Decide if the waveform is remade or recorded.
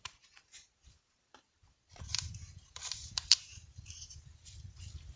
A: remade